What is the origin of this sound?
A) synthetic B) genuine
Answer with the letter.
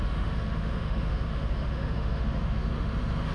A